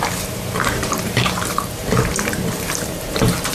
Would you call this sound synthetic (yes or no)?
yes